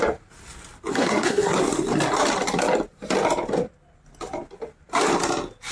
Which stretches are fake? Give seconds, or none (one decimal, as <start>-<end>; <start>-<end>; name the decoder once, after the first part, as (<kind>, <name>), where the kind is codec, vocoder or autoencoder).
0.9-1.6 (codec, SNAC)